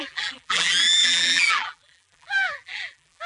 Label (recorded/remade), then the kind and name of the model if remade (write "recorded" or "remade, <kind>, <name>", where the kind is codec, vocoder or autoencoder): remade, vocoder, BigVGAN v2